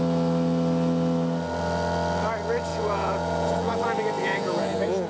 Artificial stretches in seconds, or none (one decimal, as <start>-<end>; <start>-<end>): 2.7-3.8; 4.2-5.1